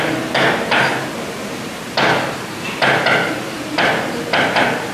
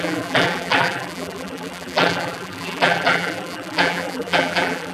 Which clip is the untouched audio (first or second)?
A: first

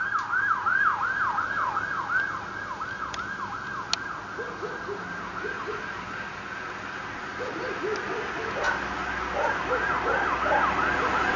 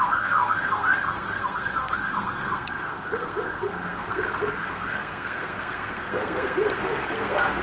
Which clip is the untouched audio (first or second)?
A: first